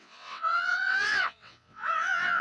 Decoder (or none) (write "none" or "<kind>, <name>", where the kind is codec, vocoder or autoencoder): vocoder, WaveNeXt